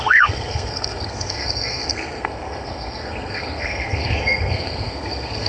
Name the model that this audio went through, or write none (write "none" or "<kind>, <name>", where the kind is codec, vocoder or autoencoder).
codec, SNAC